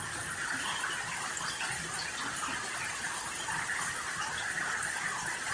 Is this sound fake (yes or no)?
no